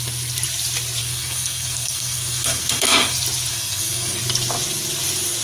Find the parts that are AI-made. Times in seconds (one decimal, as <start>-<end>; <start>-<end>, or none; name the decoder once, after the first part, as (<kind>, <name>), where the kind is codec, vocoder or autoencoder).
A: 1.0-3.1 (codec, SNAC); 3.5-4.2